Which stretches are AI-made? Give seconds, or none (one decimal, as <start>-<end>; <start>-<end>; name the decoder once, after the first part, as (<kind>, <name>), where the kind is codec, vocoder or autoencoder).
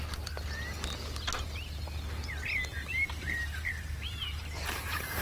2.7-5.2 (vocoder, BigVGAN v2)